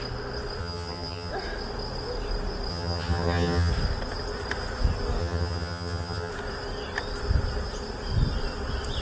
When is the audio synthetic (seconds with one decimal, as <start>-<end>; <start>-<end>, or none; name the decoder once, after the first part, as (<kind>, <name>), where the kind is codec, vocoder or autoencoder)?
0.6-1.3 (vocoder, HiFi-GAN); 2.7-3.7; 5.2-6.3